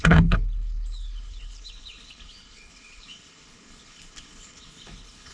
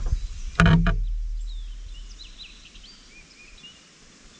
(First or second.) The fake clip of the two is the first